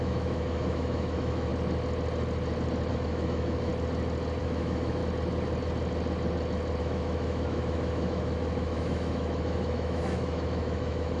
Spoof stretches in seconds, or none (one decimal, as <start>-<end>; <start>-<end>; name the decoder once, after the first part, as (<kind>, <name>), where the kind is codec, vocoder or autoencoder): 0.0-1.5 (autoencoder, DAC-VAE); 2.9-3.7; 4.4-5.0; 6.8-11.2